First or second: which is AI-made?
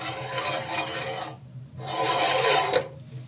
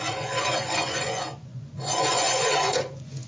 second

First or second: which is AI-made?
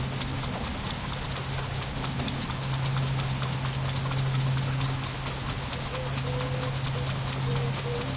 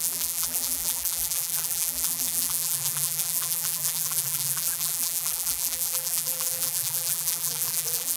second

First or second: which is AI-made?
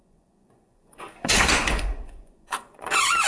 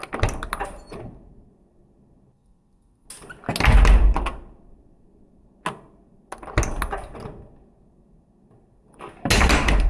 first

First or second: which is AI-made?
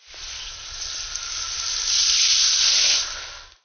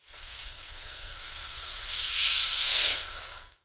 second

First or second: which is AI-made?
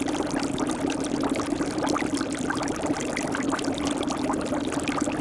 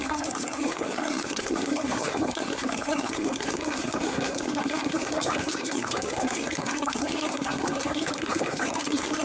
second